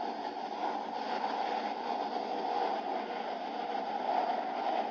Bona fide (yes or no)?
yes